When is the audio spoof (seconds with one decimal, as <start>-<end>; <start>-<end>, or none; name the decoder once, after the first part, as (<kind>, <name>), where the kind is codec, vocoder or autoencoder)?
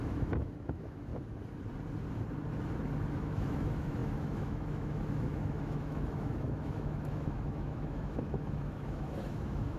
0.0-1.1 (autoencoder, DAC-VAE); 3.1-9.8